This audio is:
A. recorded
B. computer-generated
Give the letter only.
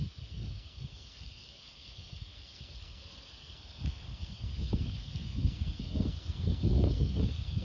B